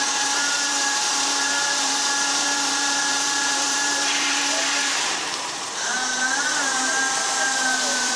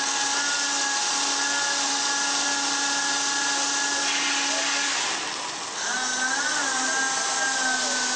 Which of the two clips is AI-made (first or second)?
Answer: first